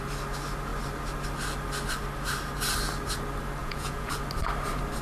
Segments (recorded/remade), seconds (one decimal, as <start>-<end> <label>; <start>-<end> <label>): 0.0-3.6 recorded; 3.6-4.1 remade; 4.1-5.0 recorded